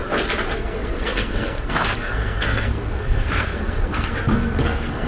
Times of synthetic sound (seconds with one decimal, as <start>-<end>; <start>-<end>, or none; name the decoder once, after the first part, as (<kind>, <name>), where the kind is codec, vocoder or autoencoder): 0.5-5.1 (codec, SNAC)